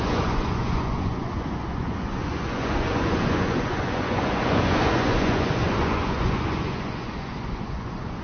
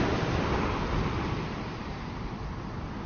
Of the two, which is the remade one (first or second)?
first